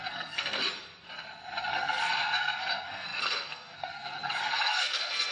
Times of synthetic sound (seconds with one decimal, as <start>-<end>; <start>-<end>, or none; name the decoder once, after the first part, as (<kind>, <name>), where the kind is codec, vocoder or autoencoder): 0.0-0.6 (codec, SNAC); 1.7-5.3